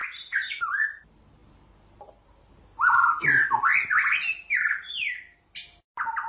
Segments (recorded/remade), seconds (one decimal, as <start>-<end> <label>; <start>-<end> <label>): 0.0-0.6 remade; 0.6-6.3 recorded